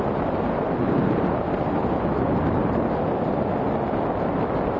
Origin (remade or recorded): recorded